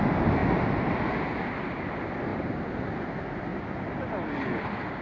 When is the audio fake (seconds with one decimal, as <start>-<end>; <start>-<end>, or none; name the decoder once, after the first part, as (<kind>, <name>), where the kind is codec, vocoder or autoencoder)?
none